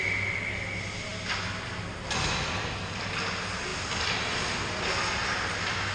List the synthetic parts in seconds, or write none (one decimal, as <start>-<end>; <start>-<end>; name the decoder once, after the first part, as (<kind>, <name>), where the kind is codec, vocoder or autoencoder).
none